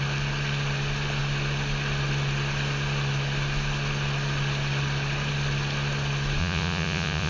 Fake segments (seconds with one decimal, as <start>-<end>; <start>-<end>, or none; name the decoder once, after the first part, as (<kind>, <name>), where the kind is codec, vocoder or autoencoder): 6.4-7.3 (vocoder, Vocos)